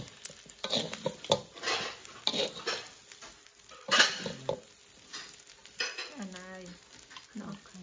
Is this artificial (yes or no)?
no